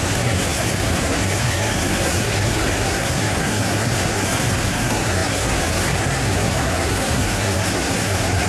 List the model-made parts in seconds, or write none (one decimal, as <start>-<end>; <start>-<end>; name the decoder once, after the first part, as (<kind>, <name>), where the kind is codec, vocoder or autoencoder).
0.0-8.5 (codec, SNAC)